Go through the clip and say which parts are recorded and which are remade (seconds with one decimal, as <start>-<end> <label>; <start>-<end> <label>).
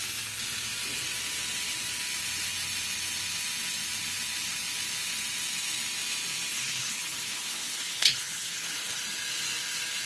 0.0-6.5 recorded; 6.5-9.0 remade; 9.0-10.1 recorded